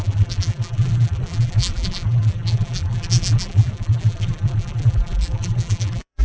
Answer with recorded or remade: remade